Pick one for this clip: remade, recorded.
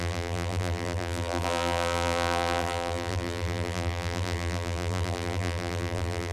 remade